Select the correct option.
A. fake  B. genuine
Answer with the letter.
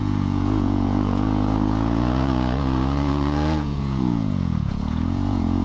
A